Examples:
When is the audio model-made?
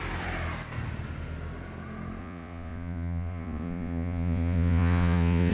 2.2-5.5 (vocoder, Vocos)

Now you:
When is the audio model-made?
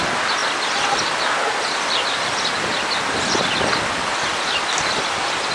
none